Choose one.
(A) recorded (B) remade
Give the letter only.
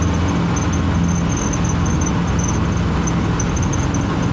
A